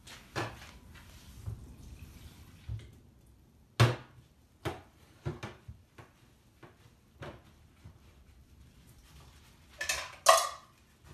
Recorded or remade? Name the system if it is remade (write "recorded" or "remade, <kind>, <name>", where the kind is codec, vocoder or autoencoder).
recorded